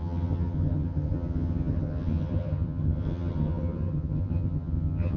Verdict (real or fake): fake